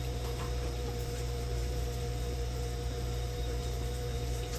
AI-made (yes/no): yes